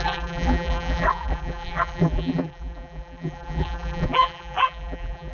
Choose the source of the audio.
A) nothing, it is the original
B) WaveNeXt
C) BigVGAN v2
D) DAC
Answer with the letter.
C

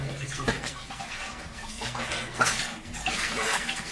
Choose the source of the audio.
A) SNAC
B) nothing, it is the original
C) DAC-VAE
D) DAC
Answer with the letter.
A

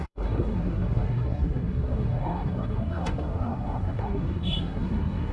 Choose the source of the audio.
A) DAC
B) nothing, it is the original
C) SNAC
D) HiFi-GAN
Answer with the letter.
C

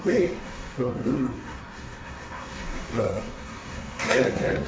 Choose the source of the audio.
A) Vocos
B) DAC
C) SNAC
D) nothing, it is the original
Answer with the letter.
C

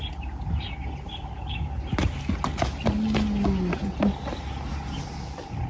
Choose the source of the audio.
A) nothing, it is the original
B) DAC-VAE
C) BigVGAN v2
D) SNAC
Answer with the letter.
A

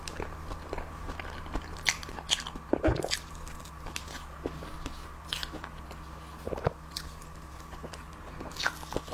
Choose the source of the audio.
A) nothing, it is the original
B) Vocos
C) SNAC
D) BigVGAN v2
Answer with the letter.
A